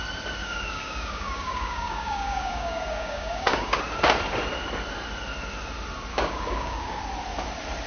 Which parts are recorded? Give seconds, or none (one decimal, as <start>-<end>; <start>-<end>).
0.0-0.4; 3.8-6.1; 7.0-7.9